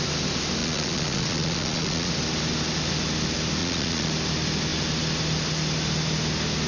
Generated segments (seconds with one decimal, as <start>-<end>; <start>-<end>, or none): 0.6-2.1; 3.6-4.1